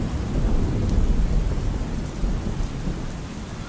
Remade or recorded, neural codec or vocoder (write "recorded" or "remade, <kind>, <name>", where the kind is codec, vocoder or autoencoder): recorded